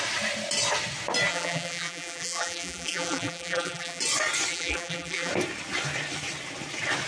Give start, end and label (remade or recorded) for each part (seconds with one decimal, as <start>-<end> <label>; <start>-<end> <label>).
0.0-1.3 recorded; 1.3-4.0 remade; 4.0-4.5 recorded; 4.5-5.3 remade; 5.3-7.1 recorded